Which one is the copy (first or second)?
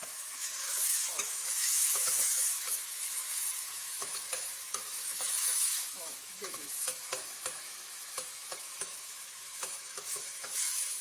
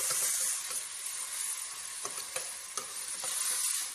first